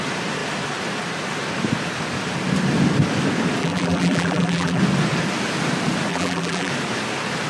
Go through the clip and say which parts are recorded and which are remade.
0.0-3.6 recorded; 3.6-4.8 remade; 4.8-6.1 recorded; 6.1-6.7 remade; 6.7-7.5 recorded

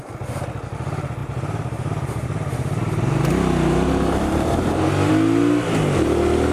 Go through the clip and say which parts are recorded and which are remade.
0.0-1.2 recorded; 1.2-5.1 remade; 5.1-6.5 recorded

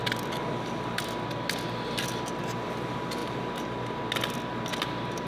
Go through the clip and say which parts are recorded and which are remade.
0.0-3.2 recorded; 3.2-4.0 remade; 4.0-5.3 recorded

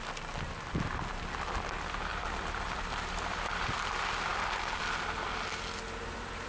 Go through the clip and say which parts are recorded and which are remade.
0.0-2.1 recorded; 2.1-3.9 remade; 3.9-6.5 recorded

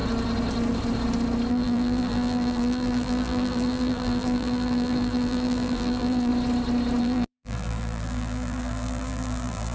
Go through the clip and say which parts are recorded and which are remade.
0.0-1.5 recorded; 1.5-6.3 remade; 6.3-7.0 recorded; 7.0-9.7 remade

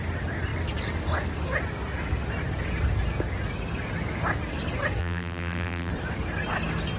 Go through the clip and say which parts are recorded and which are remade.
0.0-5.0 recorded; 5.0-5.9 remade; 5.9-7.0 recorded

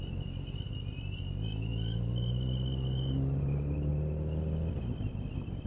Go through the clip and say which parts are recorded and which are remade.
0.0-5.7 recorded

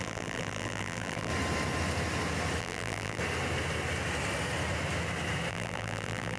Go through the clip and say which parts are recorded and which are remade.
0.0-1.3 remade; 1.3-2.6 recorded; 2.6-3.2 remade; 3.2-5.5 recorded; 5.5-6.4 remade